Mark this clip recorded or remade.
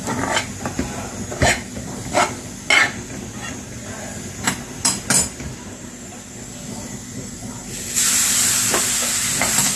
recorded